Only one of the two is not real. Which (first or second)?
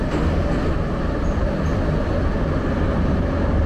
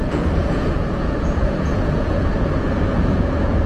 second